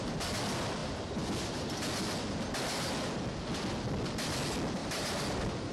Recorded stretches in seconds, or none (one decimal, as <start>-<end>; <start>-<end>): 0.0-0.8; 1.8-4.8